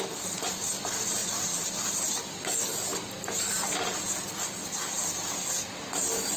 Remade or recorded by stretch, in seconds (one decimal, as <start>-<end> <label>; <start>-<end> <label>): 0.0-1.2 recorded; 1.2-1.9 remade; 1.9-6.4 recorded